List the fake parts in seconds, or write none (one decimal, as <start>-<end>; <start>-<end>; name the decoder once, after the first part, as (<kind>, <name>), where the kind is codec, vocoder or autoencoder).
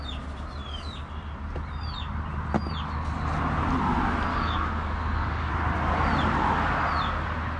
4.3-5.5 (codec, DAC)